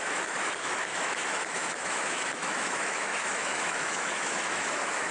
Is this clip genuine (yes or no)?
no